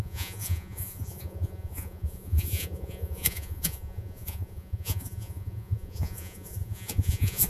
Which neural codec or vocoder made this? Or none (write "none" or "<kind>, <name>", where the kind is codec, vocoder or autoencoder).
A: vocoder, Vocos